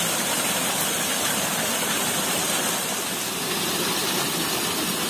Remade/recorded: recorded